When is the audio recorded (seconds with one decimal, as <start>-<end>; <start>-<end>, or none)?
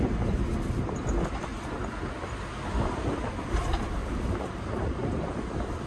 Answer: 0.0-4.0; 5.3-5.9